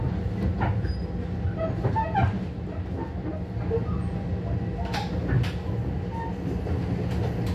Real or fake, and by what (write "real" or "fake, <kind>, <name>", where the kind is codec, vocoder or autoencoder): real